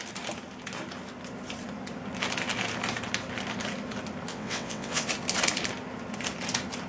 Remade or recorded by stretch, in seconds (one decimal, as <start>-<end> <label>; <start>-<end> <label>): 0.0-4.3 recorded; 4.3-5.1 remade; 5.1-6.9 recorded